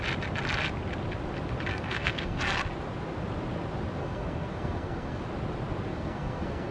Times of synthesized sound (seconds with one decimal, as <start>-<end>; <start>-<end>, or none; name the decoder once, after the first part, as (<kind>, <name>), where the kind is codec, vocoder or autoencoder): 1.7-2.4 (codec, SNAC); 4.0-5.2; 5.9-6.7